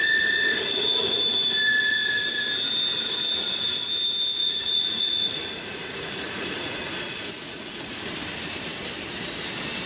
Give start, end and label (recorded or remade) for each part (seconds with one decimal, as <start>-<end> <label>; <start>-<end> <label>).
0.0-1.2 remade; 1.2-4.4 recorded; 4.4-8.0 remade; 8.0-9.9 recorded